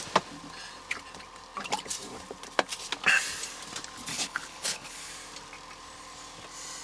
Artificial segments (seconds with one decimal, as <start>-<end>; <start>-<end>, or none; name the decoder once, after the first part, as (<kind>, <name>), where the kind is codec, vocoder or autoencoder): 4.1-5.1 (codec, HILCodec)